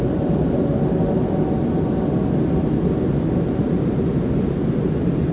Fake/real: real